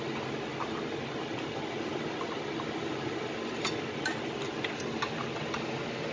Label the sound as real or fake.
real